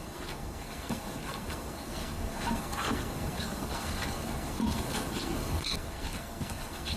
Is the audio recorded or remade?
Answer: remade